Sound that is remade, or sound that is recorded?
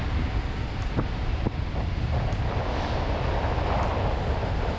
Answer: recorded